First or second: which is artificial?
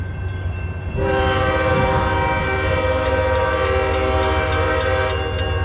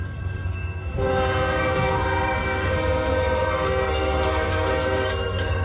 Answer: second